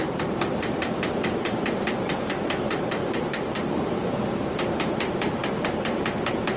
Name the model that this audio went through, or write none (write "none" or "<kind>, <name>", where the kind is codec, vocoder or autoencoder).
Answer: vocoder, BigVGAN v2